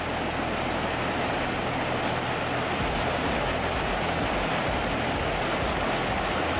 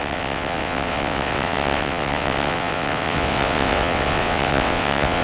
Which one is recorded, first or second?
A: first